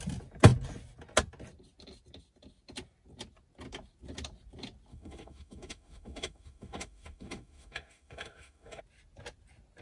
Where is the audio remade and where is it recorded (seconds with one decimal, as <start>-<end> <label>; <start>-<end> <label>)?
0.0-4.9 recorded; 4.9-8.8 remade; 8.8-9.8 recorded